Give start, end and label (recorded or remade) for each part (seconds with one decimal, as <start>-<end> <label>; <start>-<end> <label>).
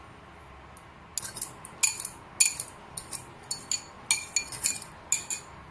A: 0.0-5.7 recorded